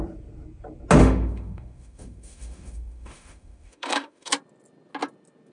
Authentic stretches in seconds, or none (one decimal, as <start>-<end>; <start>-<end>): 0.0-1.0; 4.3-5.5